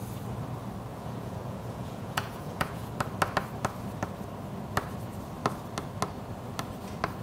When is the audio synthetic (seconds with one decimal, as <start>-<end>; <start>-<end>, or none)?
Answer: 0.9-2.9